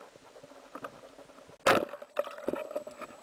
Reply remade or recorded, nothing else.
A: recorded